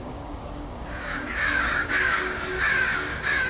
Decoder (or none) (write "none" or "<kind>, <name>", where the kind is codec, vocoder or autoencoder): codec, DAC